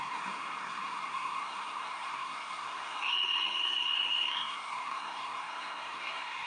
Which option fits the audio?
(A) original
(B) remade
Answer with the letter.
B